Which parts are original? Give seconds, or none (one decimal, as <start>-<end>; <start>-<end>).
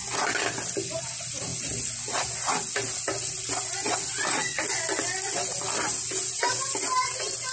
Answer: 0.0-7.5